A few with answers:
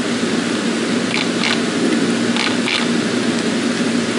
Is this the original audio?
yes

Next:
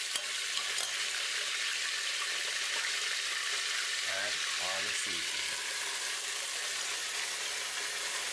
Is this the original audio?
yes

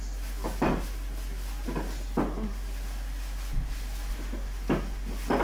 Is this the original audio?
yes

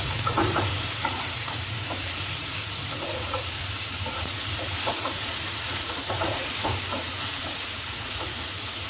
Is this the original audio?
no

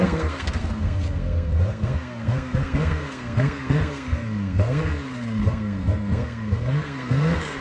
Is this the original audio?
no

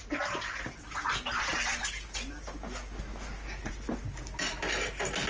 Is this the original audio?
yes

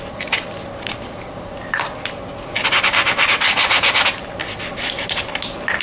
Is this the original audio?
yes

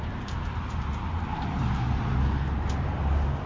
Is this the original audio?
yes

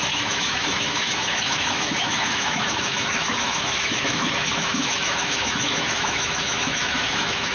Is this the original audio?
no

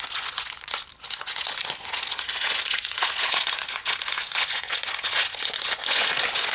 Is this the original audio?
no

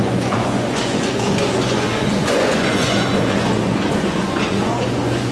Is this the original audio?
no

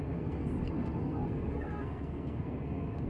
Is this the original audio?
no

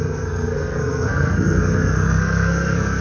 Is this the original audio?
no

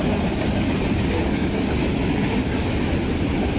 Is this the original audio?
yes